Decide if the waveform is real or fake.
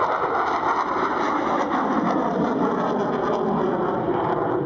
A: real